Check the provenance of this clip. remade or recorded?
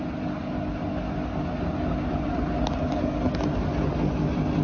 recorded